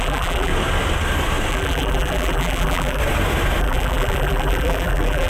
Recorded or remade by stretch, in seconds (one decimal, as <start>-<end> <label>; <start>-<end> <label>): 0.0-0.5 remade; 0.5-1.5 recorded; 1.5-3.0 remade; 3.0-3.6 recorded; 3.6-5.3 remade